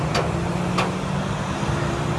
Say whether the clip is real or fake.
real